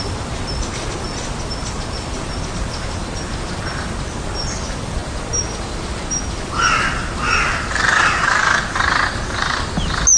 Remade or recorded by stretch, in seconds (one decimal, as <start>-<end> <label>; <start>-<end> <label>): 0.0-10.2 recorded